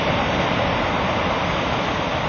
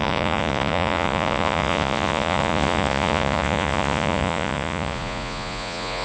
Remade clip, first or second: second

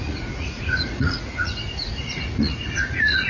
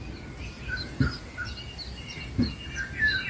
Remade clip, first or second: first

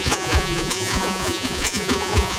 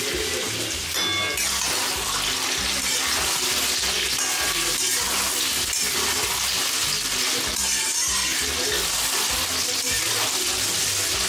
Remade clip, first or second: first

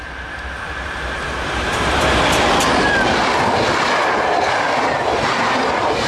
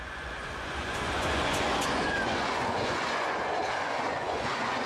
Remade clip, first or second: second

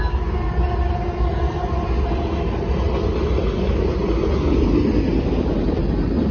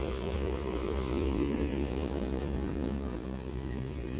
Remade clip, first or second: second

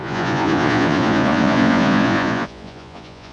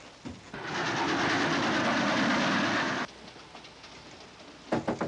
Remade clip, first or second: first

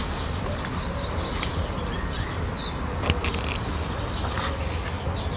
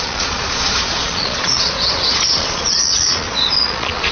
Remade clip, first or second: second